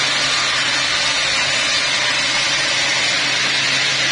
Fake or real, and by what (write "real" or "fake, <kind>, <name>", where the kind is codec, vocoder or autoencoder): real